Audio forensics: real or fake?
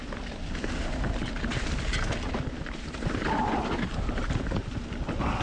real